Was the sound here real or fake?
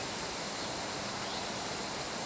fake